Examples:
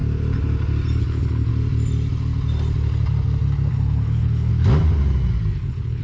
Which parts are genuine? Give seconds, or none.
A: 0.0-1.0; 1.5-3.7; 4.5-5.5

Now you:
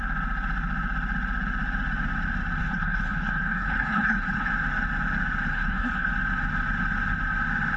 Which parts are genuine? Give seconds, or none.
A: 0.0-2.6; 4.5-5.5; 6.1-7.8

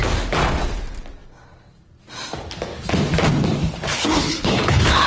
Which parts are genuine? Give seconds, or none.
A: 0.0-3.9

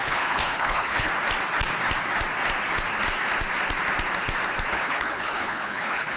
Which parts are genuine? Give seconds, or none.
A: 1.1-4.7

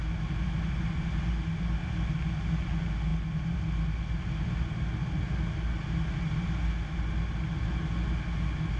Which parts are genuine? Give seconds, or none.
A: 0.0-8.8

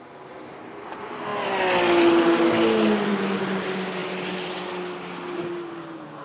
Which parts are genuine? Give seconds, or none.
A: 0.0-6.2

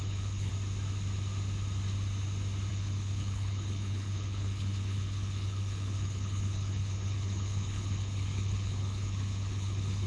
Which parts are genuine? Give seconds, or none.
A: 0.5-2.7